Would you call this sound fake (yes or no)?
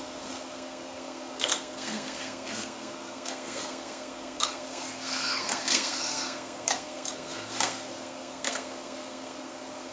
yes